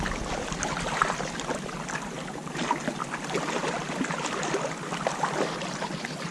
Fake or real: real